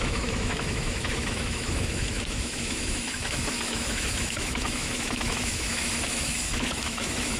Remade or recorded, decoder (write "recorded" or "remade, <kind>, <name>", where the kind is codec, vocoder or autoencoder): remade, autoencoder, DAC-VAE